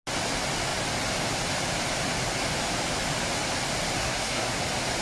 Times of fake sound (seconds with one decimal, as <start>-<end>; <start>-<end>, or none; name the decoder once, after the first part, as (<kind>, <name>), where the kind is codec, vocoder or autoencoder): 4.0-4.6 (codec, SNAC)